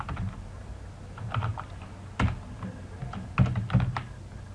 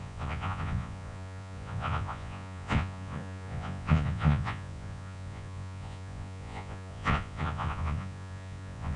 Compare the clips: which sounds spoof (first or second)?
second